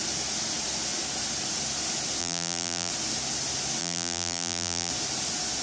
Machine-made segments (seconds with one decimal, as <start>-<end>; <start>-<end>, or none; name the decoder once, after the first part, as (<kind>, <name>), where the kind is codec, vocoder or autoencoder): 2.2-2.9 (vocoder, BigVGAN v2); 3.8-4.9